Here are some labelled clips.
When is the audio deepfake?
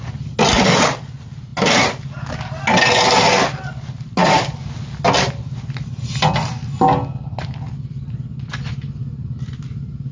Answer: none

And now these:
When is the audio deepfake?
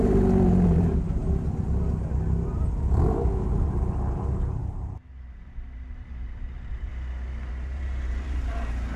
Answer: 0.0-1.2; 4.5-6.9; 7.5-9.0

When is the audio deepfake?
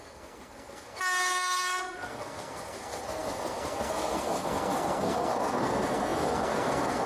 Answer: 0.0-7.1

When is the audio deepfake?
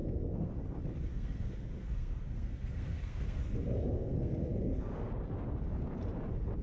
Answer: 0.0-0.5; 1.1-5.1